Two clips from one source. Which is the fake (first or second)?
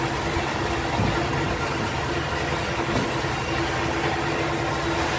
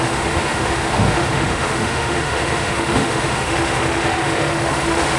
second